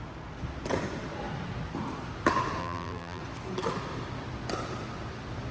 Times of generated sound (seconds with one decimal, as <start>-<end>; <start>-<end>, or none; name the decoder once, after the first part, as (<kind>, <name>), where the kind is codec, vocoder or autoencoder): 2.6-3.2 (vocoder, BigVGAN v2)